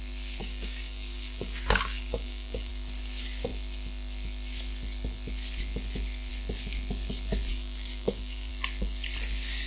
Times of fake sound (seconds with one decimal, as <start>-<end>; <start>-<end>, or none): 0.4-2.7; 7.5-8.5